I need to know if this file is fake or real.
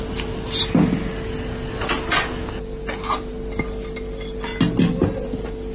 real